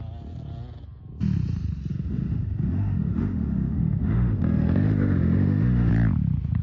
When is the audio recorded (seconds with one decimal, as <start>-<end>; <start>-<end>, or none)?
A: 0.0-1.9; 5.9-6.6